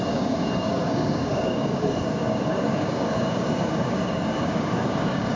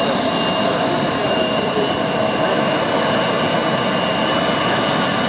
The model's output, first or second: first